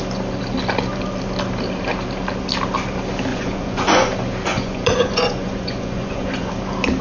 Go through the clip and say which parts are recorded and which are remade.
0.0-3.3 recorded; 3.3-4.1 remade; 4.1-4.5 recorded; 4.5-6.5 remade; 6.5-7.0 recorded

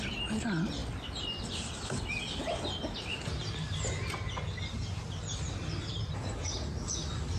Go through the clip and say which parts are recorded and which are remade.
0.0-7.4 recorded

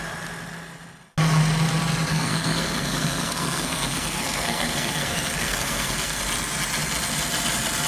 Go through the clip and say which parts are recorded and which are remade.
0.0-2.1 recorded; 2.1-6.2 remade; 6.2-7.9 recorded

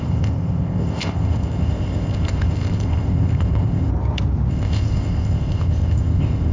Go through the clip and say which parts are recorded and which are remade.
0.0-3.9 remade; 3.9-4.5 recorded; 4.5-6.5 remade

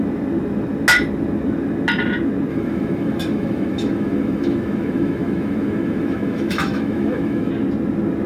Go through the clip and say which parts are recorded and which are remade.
0.0-2.5 recorded; 2.5-7.5 remade; 7.5-8.3 recorded